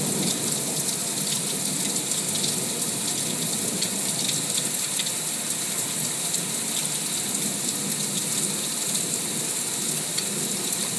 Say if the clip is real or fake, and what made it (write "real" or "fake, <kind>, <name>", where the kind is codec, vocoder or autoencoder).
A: real